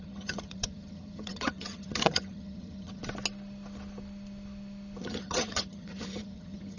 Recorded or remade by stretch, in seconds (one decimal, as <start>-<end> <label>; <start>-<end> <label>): 0.0-3.0 remade; 3.0-5.0 recorded; 5.0-6.8 remade